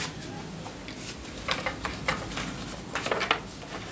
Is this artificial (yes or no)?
no